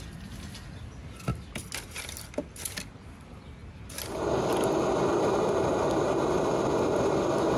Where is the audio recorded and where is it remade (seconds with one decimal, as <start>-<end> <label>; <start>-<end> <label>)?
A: 0.0-7.6 recorded